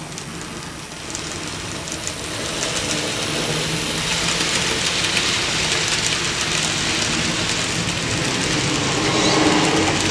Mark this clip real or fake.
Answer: real